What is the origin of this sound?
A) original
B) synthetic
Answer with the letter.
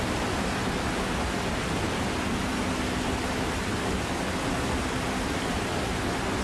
A